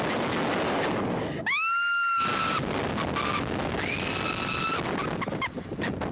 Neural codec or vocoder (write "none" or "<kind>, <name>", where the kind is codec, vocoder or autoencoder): none